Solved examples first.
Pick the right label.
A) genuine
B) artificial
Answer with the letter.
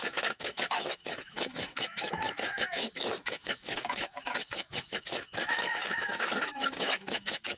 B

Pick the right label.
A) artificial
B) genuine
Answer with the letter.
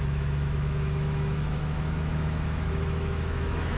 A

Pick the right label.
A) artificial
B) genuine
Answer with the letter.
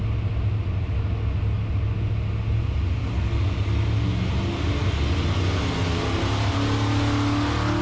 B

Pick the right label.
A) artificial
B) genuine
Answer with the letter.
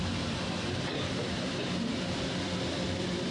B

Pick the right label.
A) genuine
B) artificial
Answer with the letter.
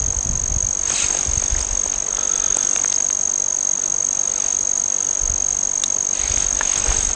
A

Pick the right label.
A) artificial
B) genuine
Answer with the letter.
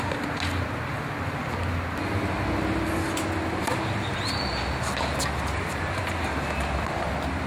B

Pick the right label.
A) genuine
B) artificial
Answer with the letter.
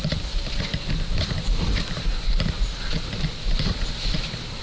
A